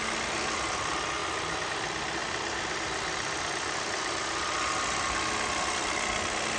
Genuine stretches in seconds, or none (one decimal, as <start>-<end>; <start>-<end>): 0.0-6.6